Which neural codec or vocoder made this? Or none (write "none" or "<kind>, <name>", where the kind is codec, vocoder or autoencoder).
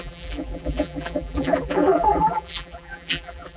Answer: vocoder, BigVGAN v2